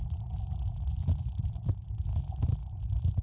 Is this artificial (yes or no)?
no